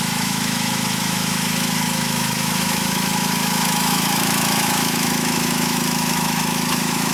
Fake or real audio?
fake